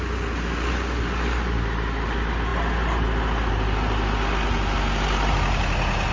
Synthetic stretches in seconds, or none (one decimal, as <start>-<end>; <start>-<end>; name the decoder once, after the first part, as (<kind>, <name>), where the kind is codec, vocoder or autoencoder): none